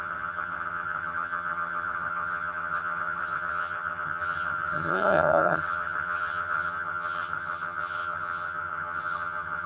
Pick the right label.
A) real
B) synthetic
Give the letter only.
B